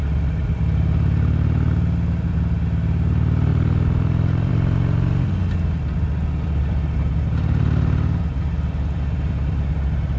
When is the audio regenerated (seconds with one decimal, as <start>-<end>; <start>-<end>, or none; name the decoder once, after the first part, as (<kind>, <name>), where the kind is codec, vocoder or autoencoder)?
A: none